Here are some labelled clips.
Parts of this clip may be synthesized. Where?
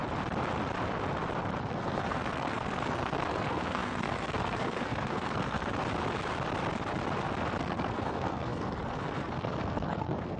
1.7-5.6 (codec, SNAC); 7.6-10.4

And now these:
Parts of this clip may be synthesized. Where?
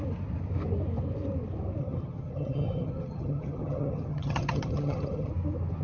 1.8-5.3 (vocoder, HiFi-GAN)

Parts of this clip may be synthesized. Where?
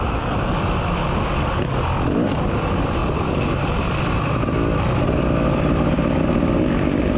none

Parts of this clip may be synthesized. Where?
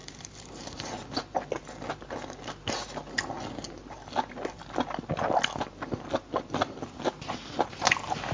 0.0-1.0 (vocoder, BigVGAN v2)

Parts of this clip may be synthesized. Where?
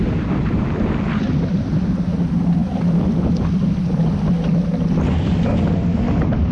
none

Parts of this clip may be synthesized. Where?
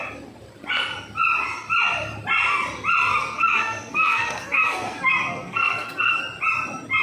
3.1-6.2 (codec, SNAC)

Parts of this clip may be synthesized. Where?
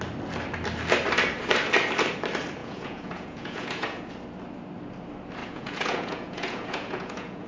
2.6-4.1 (vocoder, Vocos); 5.4-7.5